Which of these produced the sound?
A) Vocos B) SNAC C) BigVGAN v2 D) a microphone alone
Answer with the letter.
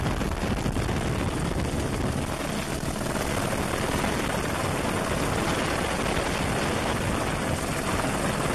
D